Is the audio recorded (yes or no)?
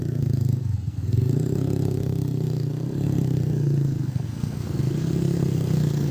no